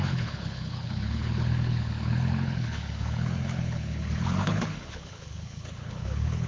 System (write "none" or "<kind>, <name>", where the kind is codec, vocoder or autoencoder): codec, HILCodec